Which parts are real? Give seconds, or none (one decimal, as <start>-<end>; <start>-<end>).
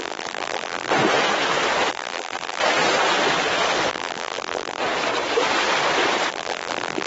0.9-1.9; 2.6-3.9; 4.8-6.3